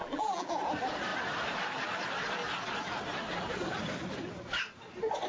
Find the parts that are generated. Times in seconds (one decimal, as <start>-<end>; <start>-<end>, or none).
0.0-0.5